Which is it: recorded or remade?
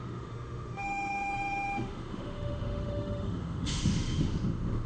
remade